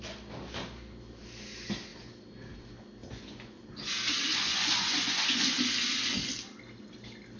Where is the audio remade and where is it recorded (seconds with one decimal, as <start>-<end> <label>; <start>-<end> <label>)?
0.0-3.0 recorded; 3.0-3.7 remade; 3.7-4.3 recorded; 4.3-5.6 remade; 5.6-7.4 recorded

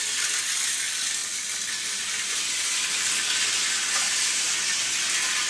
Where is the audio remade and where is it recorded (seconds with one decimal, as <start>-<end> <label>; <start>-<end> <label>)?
0.0-5.5 recorded

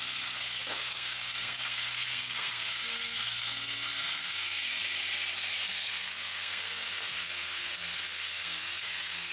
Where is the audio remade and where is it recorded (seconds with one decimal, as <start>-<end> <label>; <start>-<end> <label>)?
0.0-4.8 remade; 4.8-5.7 recorded; 5.7-9.3 remade

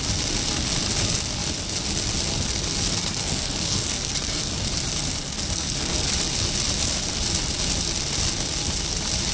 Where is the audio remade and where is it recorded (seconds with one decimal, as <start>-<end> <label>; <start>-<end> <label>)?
0.0-3.0 recorded; 3.0-4.5 remade; 4.5-5.2 recorded; 5.2-6.1 remade; 6.1-9.3 recorded

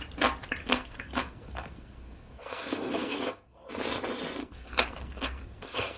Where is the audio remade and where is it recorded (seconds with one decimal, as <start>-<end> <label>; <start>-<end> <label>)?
0.0-0.6 recorded; 0.6-3.7 remade; 3.7-4.4 recorded; 4.4-6.0 remade

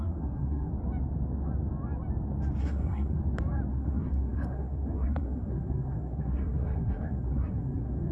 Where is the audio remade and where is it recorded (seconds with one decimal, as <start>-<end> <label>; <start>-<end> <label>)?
0.0-0.7 remade; 0.7-2.6 recorded; 2.6-3.2 remade; 3.2-3.7 recorded; 3.7-8.1 remade

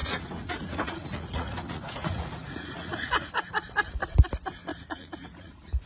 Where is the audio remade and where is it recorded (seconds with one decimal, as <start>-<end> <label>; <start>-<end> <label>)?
0.0-3.5 remade; 3.5-4.7 recorded; 4.7-5.9 remade

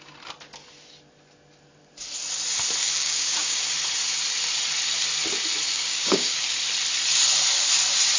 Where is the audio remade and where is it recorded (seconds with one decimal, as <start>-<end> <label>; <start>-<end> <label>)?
0.0-2.8 recorded; 2.8-3.7 remade; 3.7-5.7 recorded; 5.7-6.6 remade; 6.6-8.2 recorded